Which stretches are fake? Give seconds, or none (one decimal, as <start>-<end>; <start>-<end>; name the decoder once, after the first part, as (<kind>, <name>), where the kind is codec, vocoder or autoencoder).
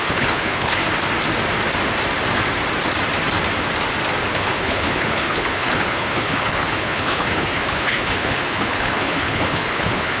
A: 0.0-0.8 (codec, HILCodec); 4.3-10.2